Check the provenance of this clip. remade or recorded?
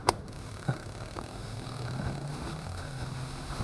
remade